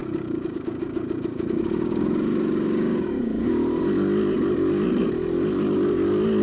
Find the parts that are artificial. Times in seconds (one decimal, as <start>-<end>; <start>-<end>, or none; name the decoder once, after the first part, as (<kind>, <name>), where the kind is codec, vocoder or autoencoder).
0.0-3.8 (codec, DAC)